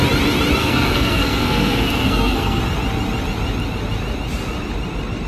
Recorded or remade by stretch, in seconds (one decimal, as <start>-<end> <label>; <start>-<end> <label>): 0.0-0.6 recorded; 0.6-2.6 remade; 2.6-5.3 recorded